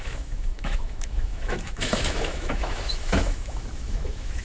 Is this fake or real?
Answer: fake